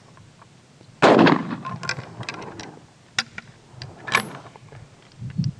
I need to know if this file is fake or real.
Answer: real